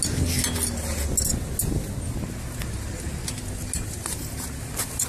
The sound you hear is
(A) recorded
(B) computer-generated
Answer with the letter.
A